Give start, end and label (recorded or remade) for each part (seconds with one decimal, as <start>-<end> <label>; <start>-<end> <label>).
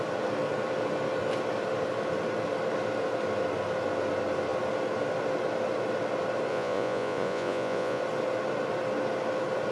0.0-6.5 recorded; 6.5-8.0 remade; 8.0-9.7 recorded